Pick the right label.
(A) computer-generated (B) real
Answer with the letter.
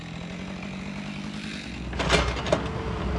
B